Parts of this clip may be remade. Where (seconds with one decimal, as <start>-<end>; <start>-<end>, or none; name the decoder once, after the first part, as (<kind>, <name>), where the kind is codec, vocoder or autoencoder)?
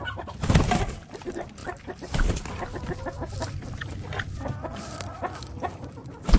none